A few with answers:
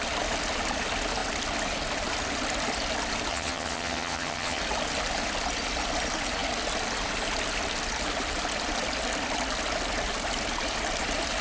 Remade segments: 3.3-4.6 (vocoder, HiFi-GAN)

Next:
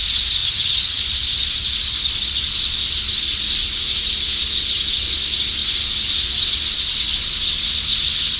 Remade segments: 0.4-1.0 (vocoder, HiFi-GAN)

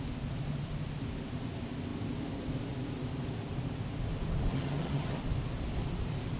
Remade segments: 4.5-5.2 (vocoder, HiFi-GAN)

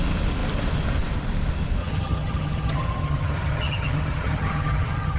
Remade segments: 1.8-5.2 (vocoder, HiFi-GAN)

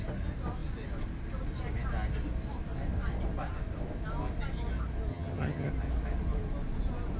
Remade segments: 5.1-5.7 (vocoder, HiFi-GAN)

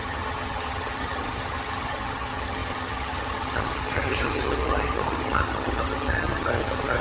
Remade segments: 0.0-7.0 (vocoder, HiFi-GAN)